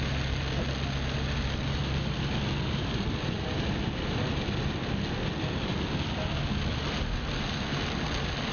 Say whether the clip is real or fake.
real